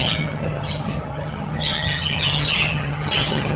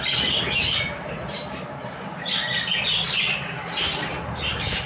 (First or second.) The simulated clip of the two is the first